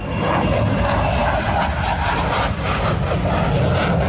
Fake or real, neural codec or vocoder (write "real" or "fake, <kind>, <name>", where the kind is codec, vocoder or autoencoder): real